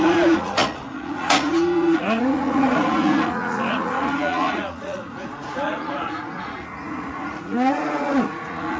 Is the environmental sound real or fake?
fake